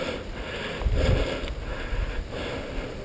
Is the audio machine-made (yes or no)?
no